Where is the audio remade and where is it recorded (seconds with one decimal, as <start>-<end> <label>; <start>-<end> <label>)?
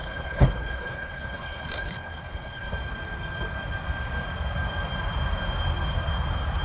0.0-2.7 remade; 2.7-6.6 recorded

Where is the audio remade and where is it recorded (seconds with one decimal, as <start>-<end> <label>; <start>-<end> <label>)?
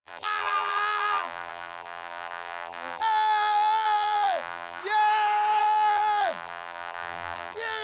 0.0-4.8 remade; 4.8-5.6 recorded; 5.6-7.8 remade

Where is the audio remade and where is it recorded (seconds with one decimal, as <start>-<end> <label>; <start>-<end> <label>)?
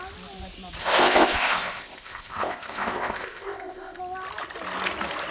0.0-0.8 recorded; 0.8-4.0 remade; 4.0-5.3 recorded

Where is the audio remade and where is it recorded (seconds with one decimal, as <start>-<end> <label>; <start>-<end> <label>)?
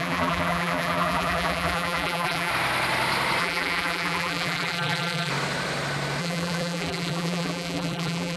0.0-2.5 remade; 2.5-3.4 recorded; 3.4-5.3 remade; 5.3-6.2 recorded; 6.2-8.4 remade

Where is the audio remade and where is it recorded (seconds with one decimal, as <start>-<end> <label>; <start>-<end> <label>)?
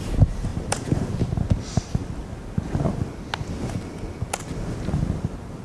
0.0-0.5 recorded; 0.5-1.1 remade; 1.1-5.6 recorded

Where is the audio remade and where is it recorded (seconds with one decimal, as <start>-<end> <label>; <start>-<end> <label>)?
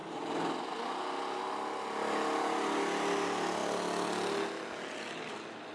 0.0-5.7 recorded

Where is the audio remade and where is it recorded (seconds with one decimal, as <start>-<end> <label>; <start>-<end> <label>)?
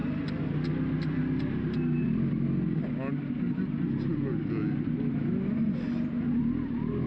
0.0-7.1 recorded